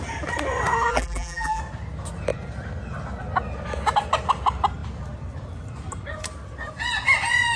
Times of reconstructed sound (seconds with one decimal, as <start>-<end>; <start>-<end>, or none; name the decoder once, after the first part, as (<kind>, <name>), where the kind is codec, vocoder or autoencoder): 0.9-1.6 (vocoder, BigVGAN v2)